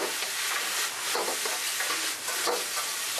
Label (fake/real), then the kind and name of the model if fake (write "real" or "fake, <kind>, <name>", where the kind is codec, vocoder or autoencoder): real